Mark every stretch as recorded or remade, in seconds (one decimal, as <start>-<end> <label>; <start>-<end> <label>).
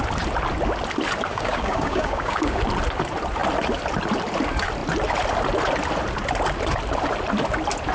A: 0.0-1.3 recorded; 1.3-2.6 remade; 2.6-7.9 recorded